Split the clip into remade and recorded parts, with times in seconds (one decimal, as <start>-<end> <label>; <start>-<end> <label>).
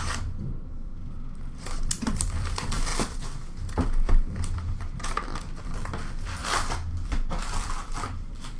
0.0-0.9 remade; 0.9-1.9 recorded; 1.9-2.9 remade; 2.9-3.6 recorded; 3.6-8.6 remade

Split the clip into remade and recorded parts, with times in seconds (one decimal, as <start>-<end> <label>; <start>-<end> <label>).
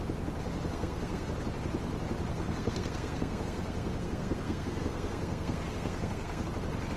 0.0-0.7 recorded; 0.7-1.3 remade; 1.3-2.3 recorded; 2.3-6.5 remade; 6.5-7.0 recorded